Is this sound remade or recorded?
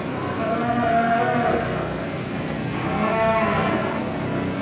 remade